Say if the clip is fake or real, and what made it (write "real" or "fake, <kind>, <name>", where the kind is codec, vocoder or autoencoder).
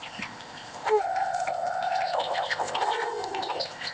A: fake, codec, ZipCodec